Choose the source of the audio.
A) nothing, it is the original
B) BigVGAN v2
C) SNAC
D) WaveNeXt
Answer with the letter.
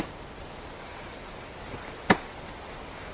A